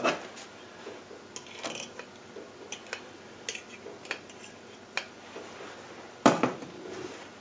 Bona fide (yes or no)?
yes